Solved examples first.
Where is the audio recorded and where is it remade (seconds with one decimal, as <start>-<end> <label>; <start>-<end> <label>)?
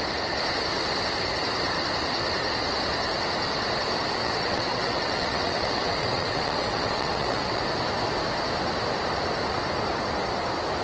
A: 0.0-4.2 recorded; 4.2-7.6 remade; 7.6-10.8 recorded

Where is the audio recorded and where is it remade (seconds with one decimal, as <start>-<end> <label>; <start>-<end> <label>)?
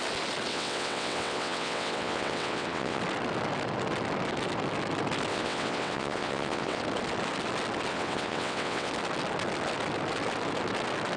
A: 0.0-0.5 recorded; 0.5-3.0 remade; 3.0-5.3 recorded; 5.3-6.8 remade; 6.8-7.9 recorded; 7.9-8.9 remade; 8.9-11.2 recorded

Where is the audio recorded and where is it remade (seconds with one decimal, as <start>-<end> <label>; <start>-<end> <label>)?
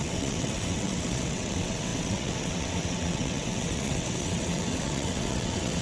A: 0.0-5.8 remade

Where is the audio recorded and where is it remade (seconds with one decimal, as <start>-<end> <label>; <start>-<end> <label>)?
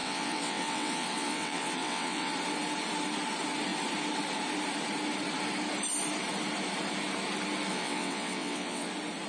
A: 0.0-2.3 remade; 2.3-7.7 recorded; 7.7-8.9 remade; 8.9-9.3 recorded